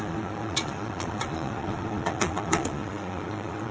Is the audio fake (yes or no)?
yes